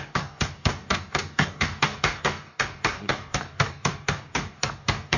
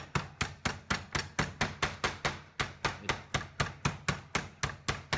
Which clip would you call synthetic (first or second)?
first